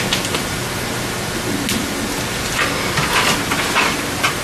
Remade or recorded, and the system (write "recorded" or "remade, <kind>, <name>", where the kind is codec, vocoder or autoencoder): recorded